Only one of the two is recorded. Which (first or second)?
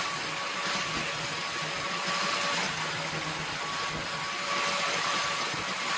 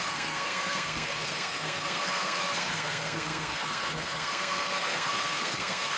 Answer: first